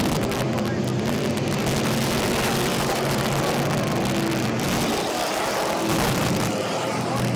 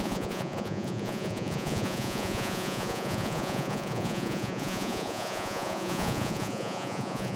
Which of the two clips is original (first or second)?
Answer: first